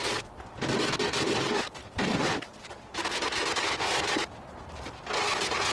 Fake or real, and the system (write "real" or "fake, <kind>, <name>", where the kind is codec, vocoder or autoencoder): real